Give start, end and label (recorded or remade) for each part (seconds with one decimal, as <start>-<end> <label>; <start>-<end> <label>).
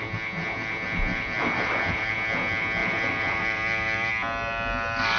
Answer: 0.0-1.1 recorded; 1.1-2.1 remade; 2.1-2.8 recorded; 2.8-4.1 remade; 4.1-5.2 recorded